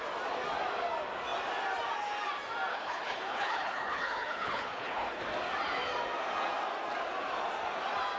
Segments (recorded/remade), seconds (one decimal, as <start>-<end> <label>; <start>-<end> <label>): 0.0-2.7 recorded; 2.7-5.2 remade; 5.2-8.2 recorded